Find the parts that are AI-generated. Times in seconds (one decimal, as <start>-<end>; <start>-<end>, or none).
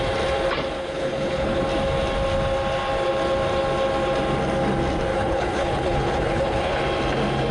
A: 0.8-1.6; 5.1-6.8